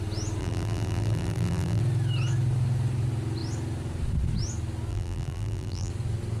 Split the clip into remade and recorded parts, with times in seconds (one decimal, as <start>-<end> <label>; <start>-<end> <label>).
0.0-0.4 recorded; 0.4-1.8 remade; 1.8-4.9 recorded; 4.9-5.9 remade; 5.9-6.4 recorded